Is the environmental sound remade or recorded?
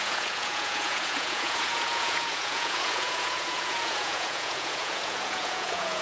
remade